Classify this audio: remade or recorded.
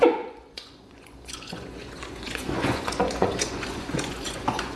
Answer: remade